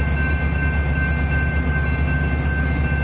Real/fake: real